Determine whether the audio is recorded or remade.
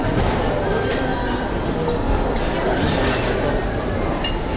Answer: recorded